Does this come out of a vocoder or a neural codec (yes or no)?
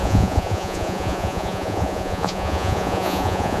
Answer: yes